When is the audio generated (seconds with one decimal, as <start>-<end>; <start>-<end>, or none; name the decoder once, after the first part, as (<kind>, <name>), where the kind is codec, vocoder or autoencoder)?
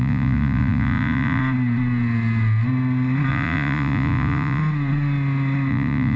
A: 0.0-1.4 (vocoder, Vocos); 3.3-4.6; 5.7-6.2